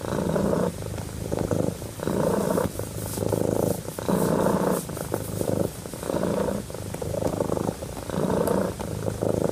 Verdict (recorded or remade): recorded